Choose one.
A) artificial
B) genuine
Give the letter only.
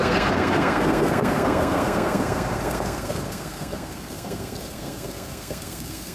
A